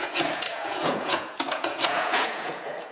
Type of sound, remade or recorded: remade